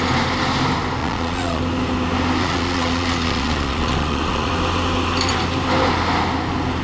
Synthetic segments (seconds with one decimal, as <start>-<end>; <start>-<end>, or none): 1.0-1.6; 2.4-4.5